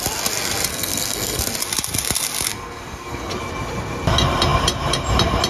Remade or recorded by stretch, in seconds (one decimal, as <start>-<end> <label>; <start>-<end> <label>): 0.0-0.7 recorded; 0.7-1.4 remade; 1.4-2.5 recorded; 2.5-3.3 remade; 3.3-5.5 recorded